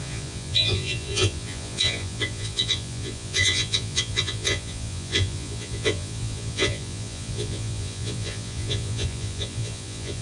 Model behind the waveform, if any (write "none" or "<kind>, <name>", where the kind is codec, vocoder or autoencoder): vocoder, Vocos